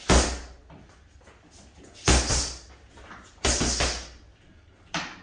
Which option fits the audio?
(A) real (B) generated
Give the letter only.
A